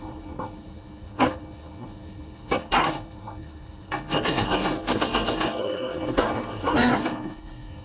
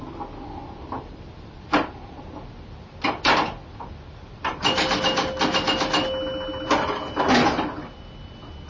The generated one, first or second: first